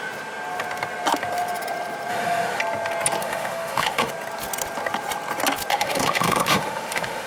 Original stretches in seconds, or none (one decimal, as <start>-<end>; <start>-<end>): 0.0-2.1; 2.6-3.2; 4.1-5.7